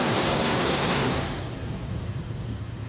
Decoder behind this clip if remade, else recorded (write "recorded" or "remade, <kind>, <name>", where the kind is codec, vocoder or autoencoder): remade, codec, SNAC